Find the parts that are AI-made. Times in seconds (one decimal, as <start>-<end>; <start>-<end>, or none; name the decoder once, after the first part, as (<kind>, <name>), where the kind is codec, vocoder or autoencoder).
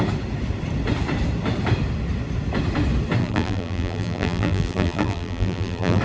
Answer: 3.2-6.0 (vocoder, BigVGAN v2)